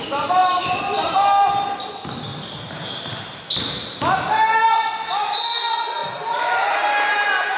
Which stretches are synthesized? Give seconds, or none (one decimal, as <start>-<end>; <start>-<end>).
2.3-3.3; 6.0-6.9